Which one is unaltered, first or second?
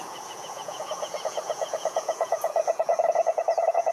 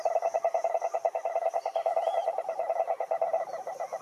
second